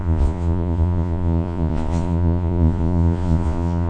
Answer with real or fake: fake